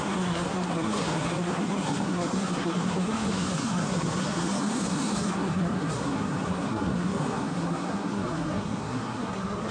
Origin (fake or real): fake